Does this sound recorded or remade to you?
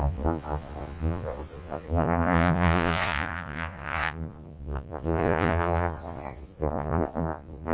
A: remade